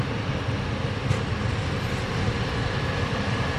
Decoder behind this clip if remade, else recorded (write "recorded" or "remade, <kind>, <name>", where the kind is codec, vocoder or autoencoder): recorded